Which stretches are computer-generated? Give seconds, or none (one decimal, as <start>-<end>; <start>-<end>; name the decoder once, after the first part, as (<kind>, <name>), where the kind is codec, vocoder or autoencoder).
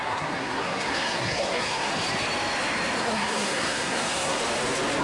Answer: 0.0-1.9 (codec, SNAC); 3.0-4.4